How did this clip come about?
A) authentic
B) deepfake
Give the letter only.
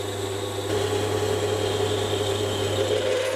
A